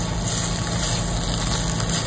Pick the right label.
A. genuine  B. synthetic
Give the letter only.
A